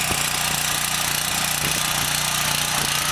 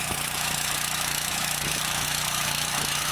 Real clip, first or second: first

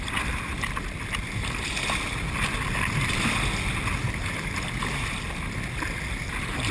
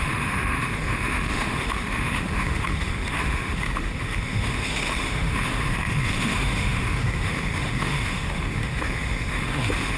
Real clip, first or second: first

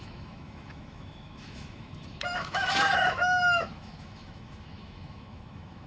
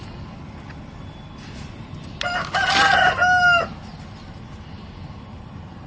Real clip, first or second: second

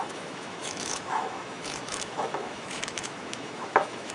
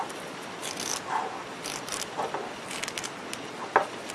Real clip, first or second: second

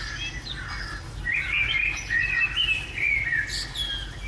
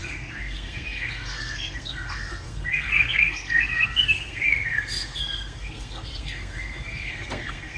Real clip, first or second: first